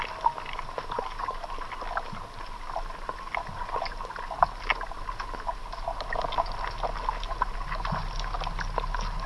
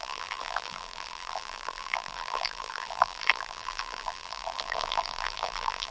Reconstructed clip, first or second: second